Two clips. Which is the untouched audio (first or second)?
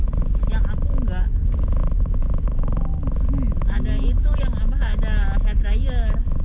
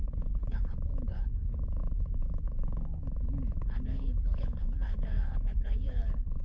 first